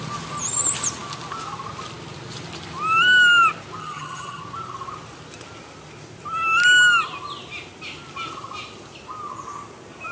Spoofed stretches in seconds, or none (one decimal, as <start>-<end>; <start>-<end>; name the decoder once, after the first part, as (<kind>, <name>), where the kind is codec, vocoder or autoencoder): 3.8-4.4 (vocoder, HiFi-GAN)